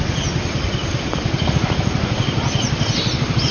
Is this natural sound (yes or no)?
no